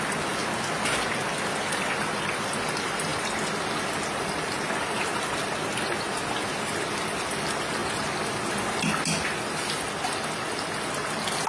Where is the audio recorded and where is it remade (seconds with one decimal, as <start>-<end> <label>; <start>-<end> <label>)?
0.0-11.5 recorded